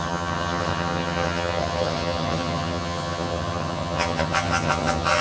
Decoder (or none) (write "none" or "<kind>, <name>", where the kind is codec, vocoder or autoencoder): vocoder, HiFi-GAN